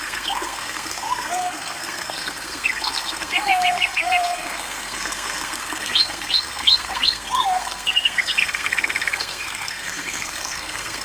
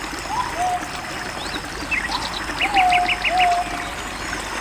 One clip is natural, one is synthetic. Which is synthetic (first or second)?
first